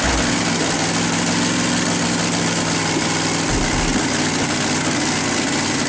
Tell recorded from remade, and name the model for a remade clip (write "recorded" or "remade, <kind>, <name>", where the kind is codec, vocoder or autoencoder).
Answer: recorded